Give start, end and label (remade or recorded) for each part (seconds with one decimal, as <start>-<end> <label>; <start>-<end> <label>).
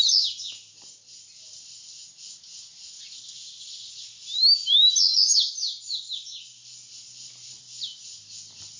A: 0.0-8.8 recorded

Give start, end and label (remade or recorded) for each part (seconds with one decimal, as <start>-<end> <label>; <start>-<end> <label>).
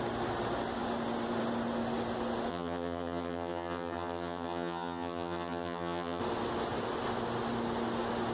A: 0.0-2.5 recorded; 2.5-6.2 remade; 6.2-8.3 recorded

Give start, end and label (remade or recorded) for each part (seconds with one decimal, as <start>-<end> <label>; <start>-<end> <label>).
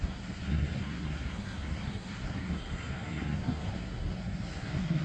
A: 0.0-5.0 remade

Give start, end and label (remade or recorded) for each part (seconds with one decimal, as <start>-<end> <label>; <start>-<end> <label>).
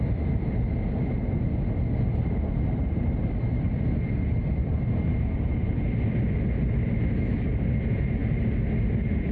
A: 0.0-9.3 recorded